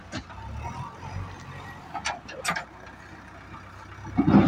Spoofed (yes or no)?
no